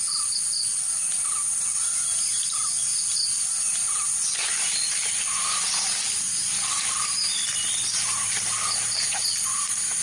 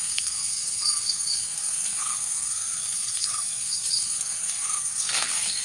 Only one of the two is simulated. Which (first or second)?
second